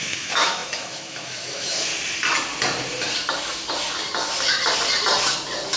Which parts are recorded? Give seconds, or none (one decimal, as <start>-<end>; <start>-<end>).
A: 1.9-5.8